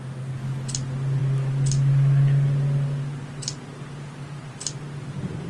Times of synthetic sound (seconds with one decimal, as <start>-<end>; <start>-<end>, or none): none